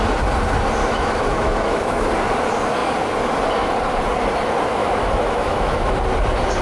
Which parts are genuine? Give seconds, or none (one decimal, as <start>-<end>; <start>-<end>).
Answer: 0.0-0.8; 2.1-4.8; 6.0-6.6